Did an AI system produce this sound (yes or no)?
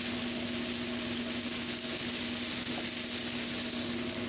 no